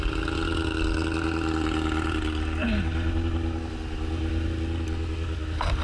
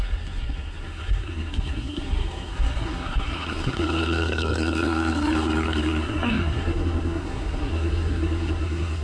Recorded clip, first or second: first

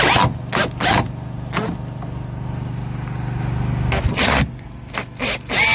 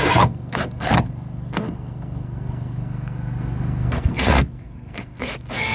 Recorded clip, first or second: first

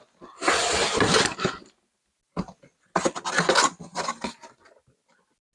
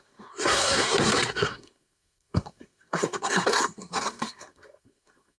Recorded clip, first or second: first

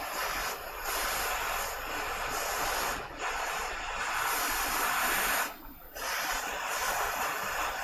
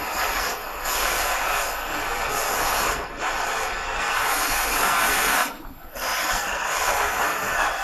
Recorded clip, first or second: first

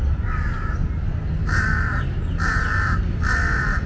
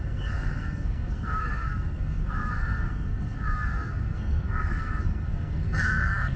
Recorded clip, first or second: first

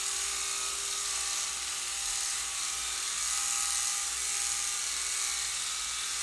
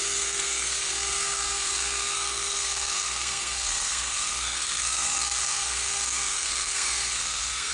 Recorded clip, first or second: first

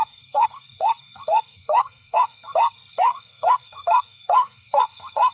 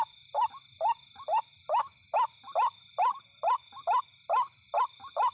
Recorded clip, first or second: second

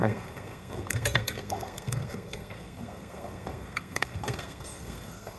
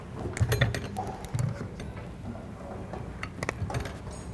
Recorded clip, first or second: second